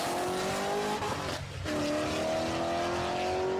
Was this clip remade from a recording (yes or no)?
no